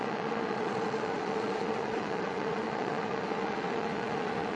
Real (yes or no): no